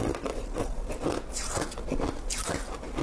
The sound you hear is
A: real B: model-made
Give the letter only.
A